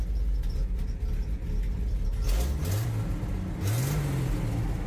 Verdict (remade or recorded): recorded